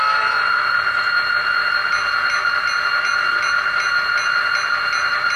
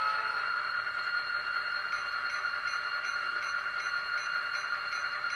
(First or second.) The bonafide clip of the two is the first